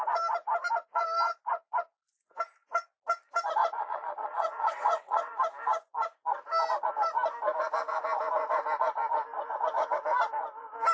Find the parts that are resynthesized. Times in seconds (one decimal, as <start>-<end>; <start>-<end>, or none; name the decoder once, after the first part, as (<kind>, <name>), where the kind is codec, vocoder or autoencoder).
3.6-5.4 (vocoder, WaveNeXt)